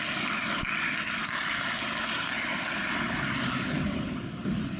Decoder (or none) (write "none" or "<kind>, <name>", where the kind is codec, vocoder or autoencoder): none